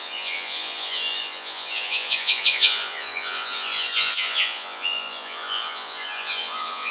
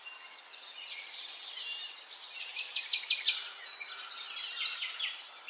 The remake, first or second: first